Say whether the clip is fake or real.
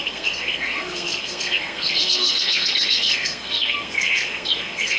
fake